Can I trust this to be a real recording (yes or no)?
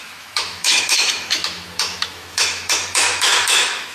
no